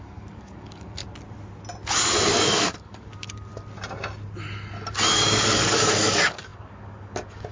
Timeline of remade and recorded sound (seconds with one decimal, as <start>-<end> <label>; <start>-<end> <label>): 0.0-1.0 remade; 1.0-2.3 recorded; 2.3-3.5 remade; 3.5-5.1 recorded; 5.1-7.5 remade